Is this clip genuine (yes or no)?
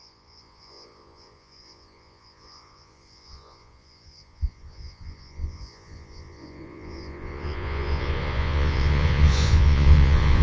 no